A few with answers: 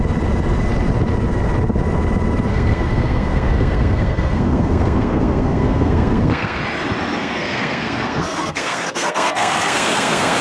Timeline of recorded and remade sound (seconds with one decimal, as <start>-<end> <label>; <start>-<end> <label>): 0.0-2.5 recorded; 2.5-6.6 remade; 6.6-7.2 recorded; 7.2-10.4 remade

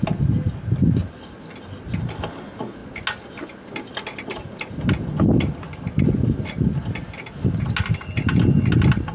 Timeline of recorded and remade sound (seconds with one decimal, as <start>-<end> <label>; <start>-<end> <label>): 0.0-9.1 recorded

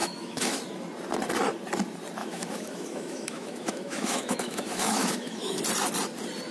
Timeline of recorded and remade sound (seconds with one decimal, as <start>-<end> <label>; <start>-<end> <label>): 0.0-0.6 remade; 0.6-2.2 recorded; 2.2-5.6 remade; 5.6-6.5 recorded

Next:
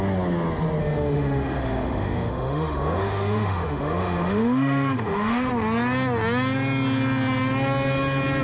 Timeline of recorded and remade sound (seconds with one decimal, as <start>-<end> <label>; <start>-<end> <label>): 0.0-0.8 recorded; 0.8-5.5 remade; 5.5-8.4 recorded

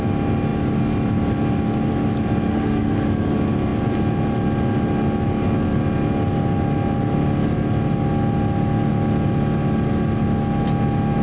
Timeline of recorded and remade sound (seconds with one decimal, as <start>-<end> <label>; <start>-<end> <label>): 0.0-2.5 recorded; 2.5-3.1 remade; 3.1-11.2 recorded

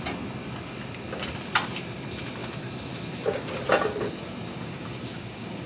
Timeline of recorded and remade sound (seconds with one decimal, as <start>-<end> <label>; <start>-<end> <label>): 0.0-4.5 recorded; 4.5-5.7 remade